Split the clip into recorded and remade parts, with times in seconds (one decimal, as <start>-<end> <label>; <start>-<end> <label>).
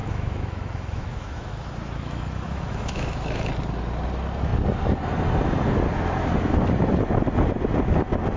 0.0-3.5 remade; 3.5-8.4 recorded